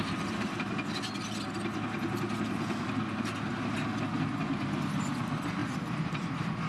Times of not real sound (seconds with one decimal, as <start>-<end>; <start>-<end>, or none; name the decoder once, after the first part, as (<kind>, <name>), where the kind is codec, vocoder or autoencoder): none